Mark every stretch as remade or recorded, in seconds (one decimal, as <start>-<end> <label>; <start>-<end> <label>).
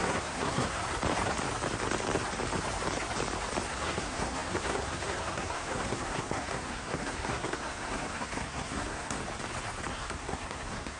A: 0.0-0.8 remade; 0.8-3.7 recorded; 3.7-9.2 remade; 9.2-9.9 recorded; 9.9-11.0 remade